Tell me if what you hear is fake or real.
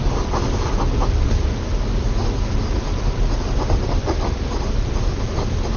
real